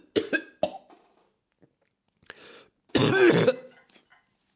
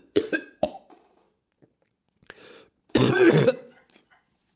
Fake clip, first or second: second